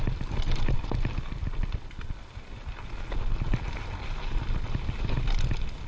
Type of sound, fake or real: real